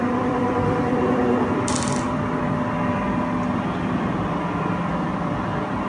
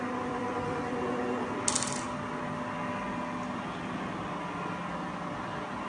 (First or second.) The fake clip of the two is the first